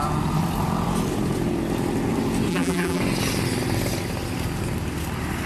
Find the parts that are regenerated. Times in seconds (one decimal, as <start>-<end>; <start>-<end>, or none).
2.5-3.0